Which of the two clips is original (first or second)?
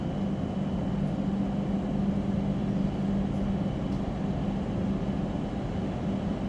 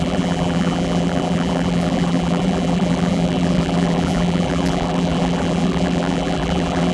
first